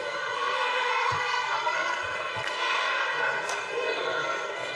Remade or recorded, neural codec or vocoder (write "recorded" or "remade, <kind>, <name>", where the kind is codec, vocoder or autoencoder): remade, codec, SNAC